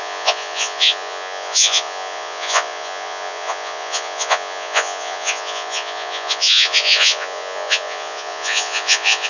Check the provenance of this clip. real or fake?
fake